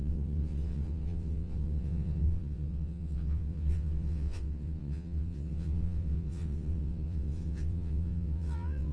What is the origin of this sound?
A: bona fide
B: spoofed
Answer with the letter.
B